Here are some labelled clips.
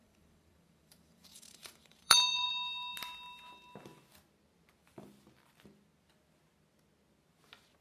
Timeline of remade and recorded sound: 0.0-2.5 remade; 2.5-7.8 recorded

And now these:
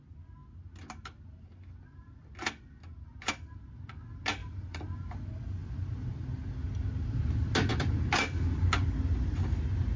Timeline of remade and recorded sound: 0.0-4.4 recorded; 4.4-5.1 remade; 5.1-10.0 recorded

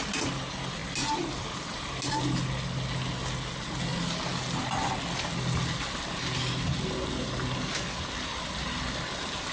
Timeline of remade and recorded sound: 0.0-9.5 recorded

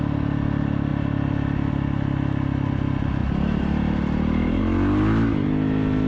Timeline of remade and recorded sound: 0.0-3.2 recorded; 3.2-4.6 remade; 4.6-6.1 recorded

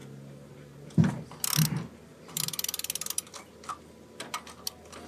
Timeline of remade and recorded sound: 0.0-5.1 recorded